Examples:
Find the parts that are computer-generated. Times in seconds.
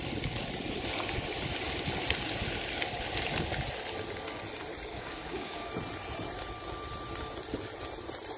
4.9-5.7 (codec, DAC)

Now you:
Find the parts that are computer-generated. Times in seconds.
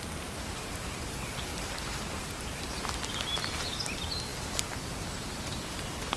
0.0-6.2 (vocoder, BigVGAN v2)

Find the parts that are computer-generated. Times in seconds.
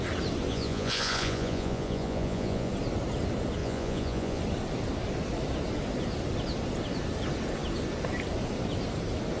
0.5-2.7 (vocoder, Vocos); 3.6-4.4